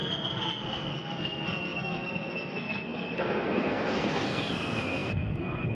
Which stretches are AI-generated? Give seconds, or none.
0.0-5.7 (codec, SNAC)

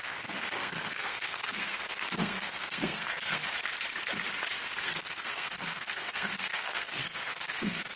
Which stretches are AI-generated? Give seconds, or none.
0.0-3.4 (codec, SNAC); 4.8-8.0

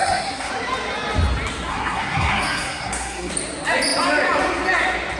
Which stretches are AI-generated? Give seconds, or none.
0.0-0.5 (codec, SNAC); 1.7-3.3

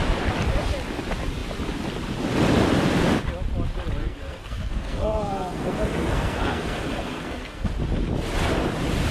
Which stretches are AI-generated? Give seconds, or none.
4.0-7.7 (codec, SNAC)

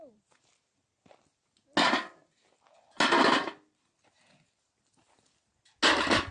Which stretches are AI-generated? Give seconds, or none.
none

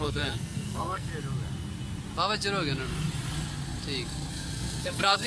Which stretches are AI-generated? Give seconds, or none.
0.0-1.1 (codec, SNAC); 4.3-5.3

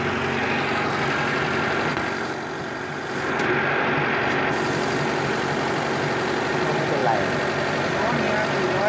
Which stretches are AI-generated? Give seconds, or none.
none